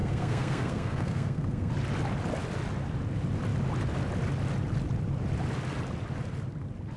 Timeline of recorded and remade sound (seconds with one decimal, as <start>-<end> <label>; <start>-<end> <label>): 0.0-1.7 remade; 1.7-7.0 recorded